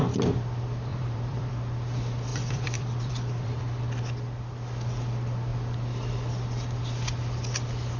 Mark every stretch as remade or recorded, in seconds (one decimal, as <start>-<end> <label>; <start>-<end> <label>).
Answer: 0.0-0.9 recorded; 0.9-1.5 remade; 1.5-2.3 recorded; 2.3-3.6 remade; 3.6-8.0 recorded